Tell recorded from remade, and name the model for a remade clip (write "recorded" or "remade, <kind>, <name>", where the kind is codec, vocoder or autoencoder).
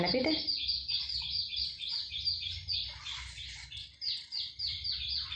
recorded